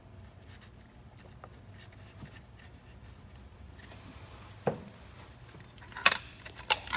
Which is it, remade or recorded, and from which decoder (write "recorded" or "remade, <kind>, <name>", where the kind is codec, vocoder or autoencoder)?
recorded